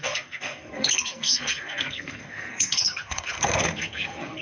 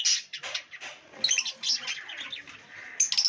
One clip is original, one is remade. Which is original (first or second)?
second